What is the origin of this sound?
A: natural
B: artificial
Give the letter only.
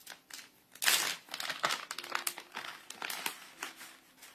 A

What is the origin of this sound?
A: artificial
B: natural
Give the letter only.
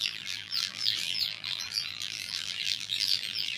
A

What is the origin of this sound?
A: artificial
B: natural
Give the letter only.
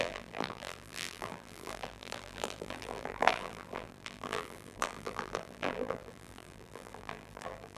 A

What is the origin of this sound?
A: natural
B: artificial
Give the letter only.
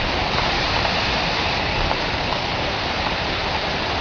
B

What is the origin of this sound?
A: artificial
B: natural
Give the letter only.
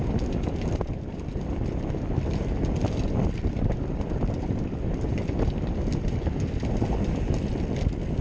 A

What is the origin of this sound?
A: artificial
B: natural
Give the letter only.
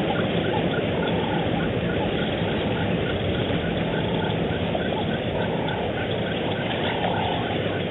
B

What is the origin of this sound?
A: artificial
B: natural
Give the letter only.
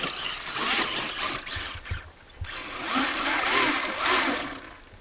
B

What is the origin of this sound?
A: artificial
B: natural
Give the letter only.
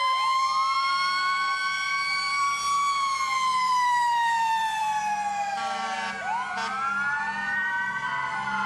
A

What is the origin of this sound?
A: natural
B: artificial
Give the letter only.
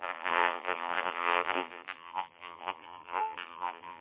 B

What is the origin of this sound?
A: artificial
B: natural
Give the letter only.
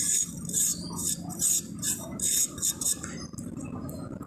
B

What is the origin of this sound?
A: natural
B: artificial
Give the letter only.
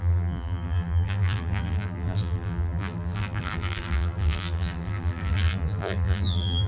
B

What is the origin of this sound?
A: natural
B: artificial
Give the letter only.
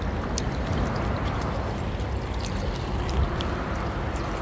A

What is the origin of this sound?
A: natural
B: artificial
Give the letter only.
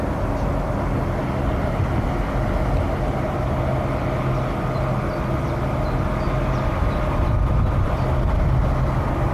A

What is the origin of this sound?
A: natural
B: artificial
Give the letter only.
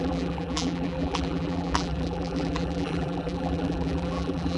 B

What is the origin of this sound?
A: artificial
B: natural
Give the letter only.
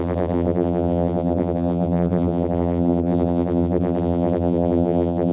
A